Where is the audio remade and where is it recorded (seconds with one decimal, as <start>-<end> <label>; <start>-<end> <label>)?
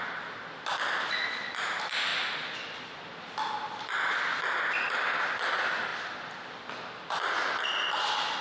0.0-8.4 recorded